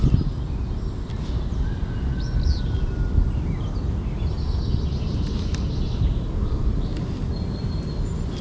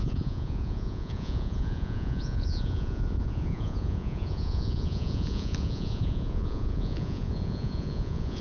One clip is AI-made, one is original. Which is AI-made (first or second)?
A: second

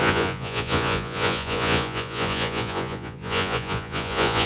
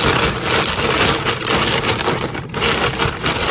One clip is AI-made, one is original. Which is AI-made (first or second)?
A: first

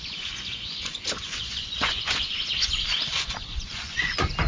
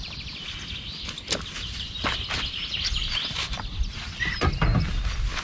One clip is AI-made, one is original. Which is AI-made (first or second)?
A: first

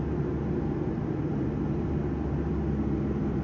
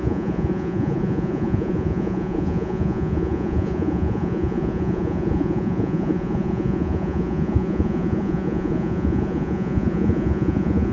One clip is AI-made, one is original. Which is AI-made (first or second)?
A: second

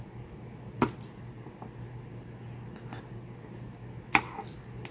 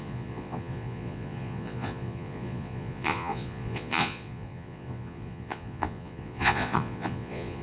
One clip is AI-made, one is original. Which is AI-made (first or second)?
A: second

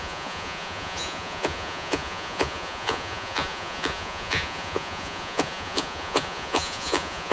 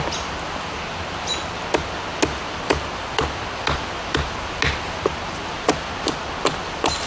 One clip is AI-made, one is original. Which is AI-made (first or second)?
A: first